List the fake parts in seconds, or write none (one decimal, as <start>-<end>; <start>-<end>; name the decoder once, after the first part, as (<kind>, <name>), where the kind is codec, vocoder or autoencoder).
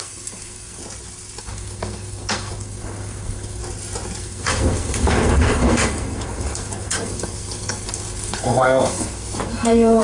0.0-0.8 (codec, SNAC); 1.4-3.6; 4.2-10.0